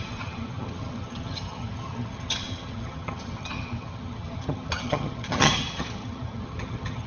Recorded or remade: remade